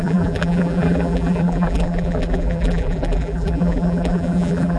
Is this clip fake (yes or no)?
yes